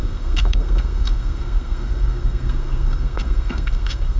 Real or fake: fake